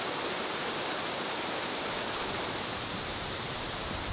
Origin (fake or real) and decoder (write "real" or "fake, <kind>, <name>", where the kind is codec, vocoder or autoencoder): fake, vocoder, BigVGAN v2